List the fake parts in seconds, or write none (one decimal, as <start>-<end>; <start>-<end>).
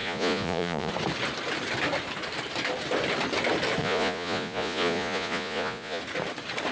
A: 0.0-0.9; 3.8-6.0